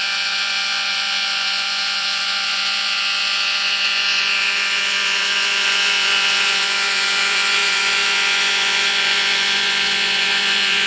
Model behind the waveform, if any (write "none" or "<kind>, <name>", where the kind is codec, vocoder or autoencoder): vocoder, Vocos